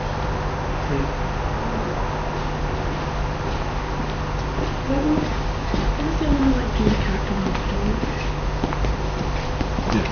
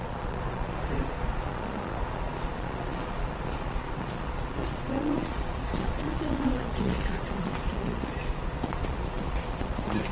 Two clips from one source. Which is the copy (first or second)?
second